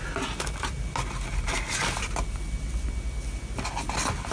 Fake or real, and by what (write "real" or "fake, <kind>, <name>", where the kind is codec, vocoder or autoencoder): real